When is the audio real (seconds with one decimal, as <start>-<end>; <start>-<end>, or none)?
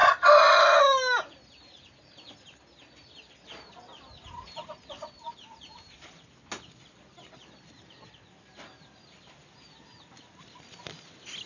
0.0-11.5